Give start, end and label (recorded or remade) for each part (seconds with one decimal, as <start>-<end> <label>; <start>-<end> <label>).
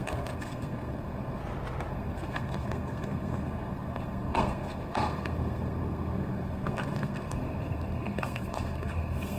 0.0-1.4 remade; 1.4-1.9 recorded; 1.9-9.4 remade